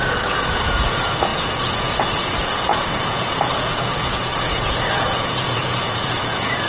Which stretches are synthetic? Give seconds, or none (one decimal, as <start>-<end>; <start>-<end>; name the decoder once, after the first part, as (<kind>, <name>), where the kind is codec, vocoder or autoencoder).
0.0-6.7 (vocoder, Vocos)